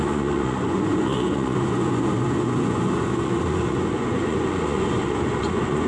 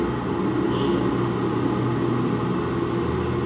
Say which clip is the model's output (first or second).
first